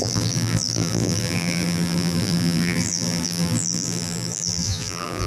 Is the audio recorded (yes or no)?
no